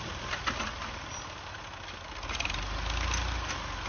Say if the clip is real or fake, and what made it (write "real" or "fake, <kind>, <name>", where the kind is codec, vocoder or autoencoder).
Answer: real